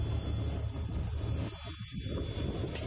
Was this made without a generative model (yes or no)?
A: yes